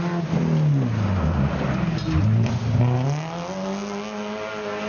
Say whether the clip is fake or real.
real